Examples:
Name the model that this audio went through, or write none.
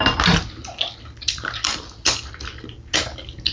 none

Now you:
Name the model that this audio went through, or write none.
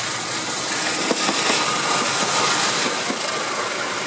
none